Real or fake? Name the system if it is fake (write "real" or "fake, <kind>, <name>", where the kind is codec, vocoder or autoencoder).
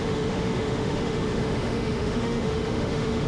fake, autoencoder, DAC-VAE